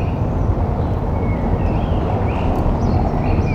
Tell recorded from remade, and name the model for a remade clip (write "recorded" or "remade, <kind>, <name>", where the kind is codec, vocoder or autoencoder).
recorded